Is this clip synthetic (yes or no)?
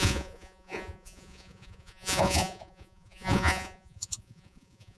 yes